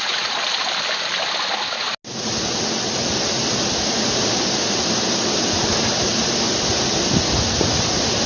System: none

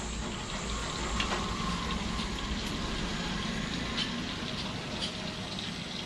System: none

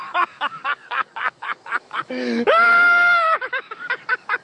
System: codec, DAC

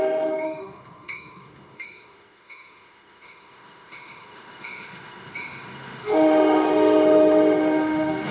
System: autoencoder, DAC-VAE